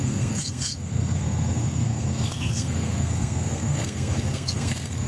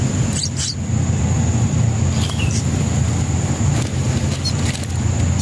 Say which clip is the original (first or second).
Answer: second